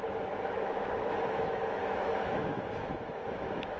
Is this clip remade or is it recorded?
remade